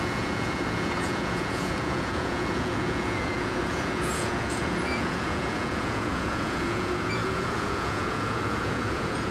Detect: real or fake fake